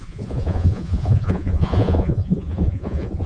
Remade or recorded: remade